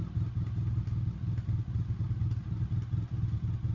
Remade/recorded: recorded